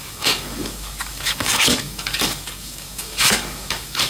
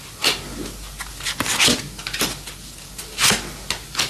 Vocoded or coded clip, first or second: first